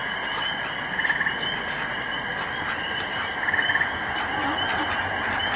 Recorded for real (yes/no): yes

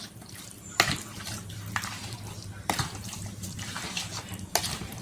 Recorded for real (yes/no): no